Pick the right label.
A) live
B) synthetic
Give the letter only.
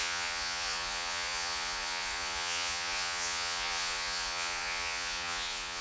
B